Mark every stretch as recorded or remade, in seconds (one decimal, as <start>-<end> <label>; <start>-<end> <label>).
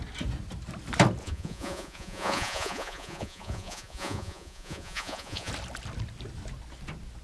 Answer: 0.0-1.2 recorded; 1.2-5.5 remade; 5.5-7.2 recorded